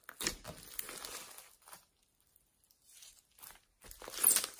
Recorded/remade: recorded